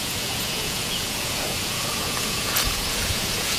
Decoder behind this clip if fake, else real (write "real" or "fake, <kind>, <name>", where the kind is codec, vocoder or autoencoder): fake, vocoder, Vocos